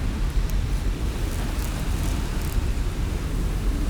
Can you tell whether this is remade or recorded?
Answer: recorded